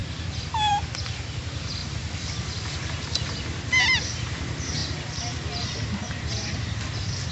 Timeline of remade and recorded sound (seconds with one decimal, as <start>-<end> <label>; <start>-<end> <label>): 0.0-7.3 recorded